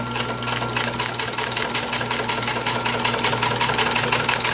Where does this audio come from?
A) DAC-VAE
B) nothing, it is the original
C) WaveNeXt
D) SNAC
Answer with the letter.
B